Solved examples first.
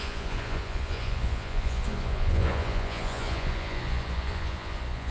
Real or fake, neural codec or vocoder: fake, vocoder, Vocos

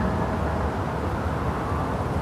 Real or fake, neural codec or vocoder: real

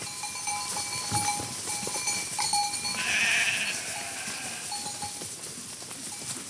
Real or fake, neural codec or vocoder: real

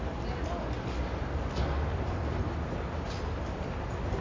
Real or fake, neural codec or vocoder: real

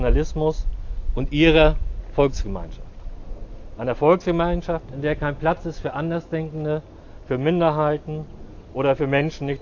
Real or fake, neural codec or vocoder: real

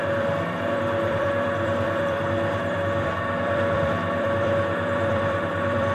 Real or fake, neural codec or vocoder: fake, vocoder, BigVGAN v2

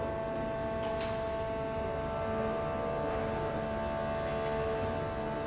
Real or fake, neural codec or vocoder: real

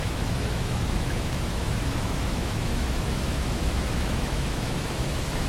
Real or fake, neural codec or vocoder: fake, autoencoder, DAC-VAE